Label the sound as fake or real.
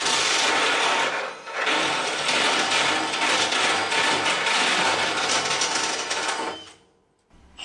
real